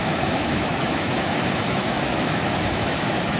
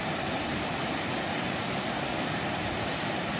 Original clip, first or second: second